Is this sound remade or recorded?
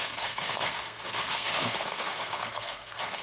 remade